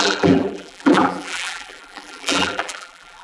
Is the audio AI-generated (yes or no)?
yes